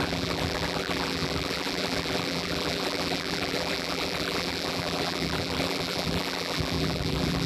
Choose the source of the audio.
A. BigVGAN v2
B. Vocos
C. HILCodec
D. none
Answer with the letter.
A